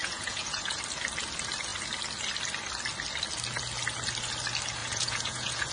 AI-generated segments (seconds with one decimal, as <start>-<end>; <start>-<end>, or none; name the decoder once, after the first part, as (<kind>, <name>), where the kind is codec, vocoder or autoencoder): 0.0-0.8 (vocoder, Vocos); 4.8-5.7